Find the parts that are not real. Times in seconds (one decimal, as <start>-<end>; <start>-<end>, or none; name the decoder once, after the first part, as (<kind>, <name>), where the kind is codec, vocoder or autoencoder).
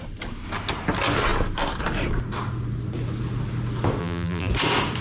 4.0-4.5 (vocoder, BigVGAN v2)